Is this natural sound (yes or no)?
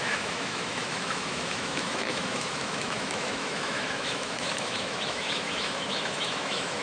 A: no